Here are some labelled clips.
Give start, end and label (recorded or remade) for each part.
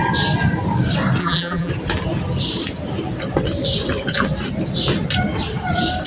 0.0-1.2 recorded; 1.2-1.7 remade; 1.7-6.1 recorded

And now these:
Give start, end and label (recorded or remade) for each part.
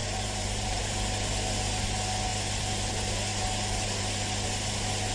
0.0-0.8 remade; 0.8-5.1 recorded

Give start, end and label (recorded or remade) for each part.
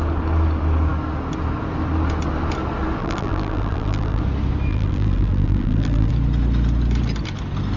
0.0-3.0 recorded; 3.0-4.2 remade; 4.2-4.7 recorded; 4.7-6.1 remade; 6.1-7.8 recorded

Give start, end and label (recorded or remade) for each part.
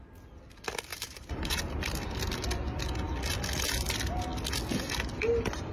0.0-0.9 recorded; 0.9-1.6 remade; 1.6-5.7 recorded